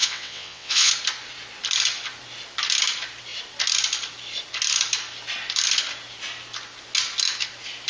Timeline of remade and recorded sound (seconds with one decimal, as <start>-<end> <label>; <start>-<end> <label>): 0.0-0.9 remade; 0.9-7.9 recorded